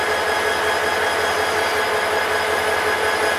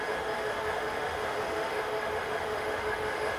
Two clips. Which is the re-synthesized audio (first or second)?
second